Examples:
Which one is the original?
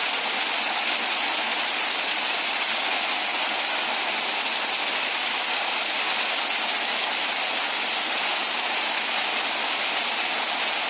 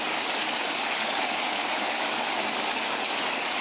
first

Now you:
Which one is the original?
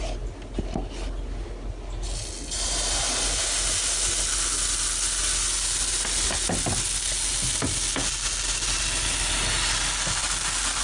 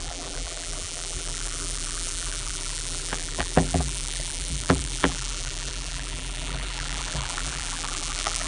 first